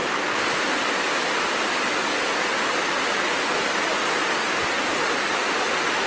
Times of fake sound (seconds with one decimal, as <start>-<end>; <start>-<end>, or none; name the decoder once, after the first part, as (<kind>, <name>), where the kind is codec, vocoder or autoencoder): none